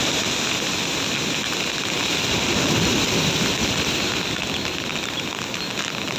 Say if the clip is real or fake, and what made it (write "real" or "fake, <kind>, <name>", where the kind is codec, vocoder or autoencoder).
real